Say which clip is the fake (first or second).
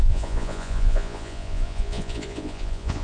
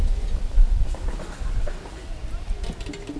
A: first